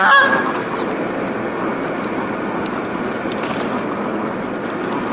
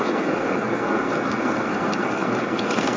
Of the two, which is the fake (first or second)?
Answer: second